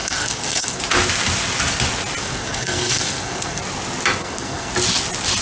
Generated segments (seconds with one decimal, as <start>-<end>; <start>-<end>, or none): 0.0-0.8; 2.2-3.6; 4.2-4.7